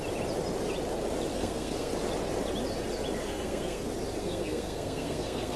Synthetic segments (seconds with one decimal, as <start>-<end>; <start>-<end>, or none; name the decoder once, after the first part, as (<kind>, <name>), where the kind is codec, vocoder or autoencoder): 1.3-1.9 (codec, SNAC); 3.2-3.8; 4.2-5.6